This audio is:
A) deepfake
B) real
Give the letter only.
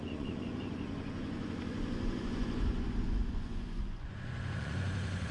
A